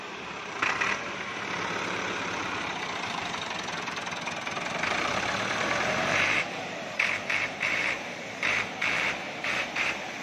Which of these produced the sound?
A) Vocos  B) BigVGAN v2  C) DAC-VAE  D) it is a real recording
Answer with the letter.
B